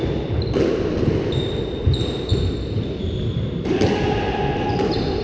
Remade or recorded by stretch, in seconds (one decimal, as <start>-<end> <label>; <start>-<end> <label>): 0.0-5.2 recorded

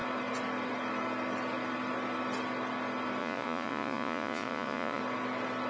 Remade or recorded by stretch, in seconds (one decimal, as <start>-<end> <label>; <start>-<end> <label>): 0.0-3.2 recorded; 3.2-5.0 remade; 5.0-5.7 recorded